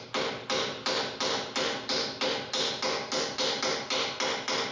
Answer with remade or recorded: recorded